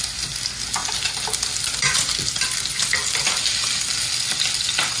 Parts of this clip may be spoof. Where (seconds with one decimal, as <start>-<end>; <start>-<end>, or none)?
none